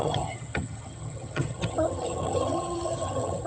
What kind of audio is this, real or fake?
fake